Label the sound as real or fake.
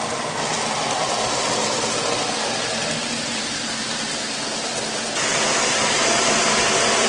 real